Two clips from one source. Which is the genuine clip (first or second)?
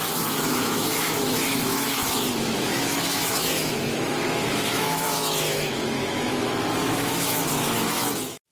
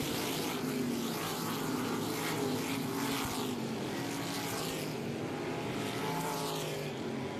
second